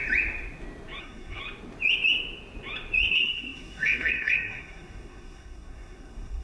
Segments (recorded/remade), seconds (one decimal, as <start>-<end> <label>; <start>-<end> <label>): 0.0-1.0 recorded; 1.0-1.4 remade; 1.4-3.1 recorded; 3.1-6.4 remade